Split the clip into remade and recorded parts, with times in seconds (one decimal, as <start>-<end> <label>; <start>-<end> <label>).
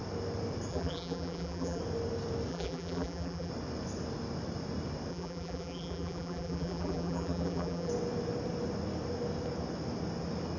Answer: 0.0-0.7 recorded; 0.7-1.8 remade; 1.8-2.5 recorded; 2.5-3.5 remade; 3.5-5.1 recorded; 5.1-7.9 remade; 7.9-10.6 recorded